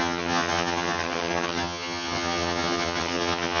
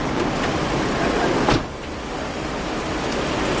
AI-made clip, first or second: first